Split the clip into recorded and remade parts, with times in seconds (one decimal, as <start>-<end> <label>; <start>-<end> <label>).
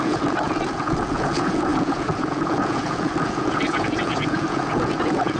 0.0-5.4 remade